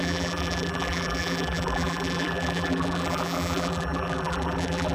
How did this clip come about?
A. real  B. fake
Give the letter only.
B